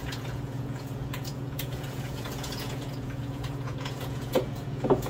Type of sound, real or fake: fake